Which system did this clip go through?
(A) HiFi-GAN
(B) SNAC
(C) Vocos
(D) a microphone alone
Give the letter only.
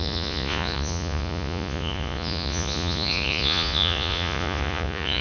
C